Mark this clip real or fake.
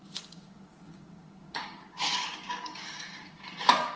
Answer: fake